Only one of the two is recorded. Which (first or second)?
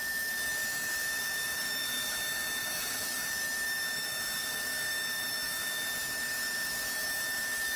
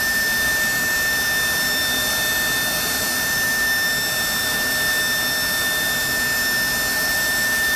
second